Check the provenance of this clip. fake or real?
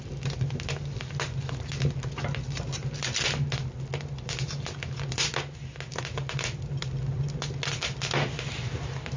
real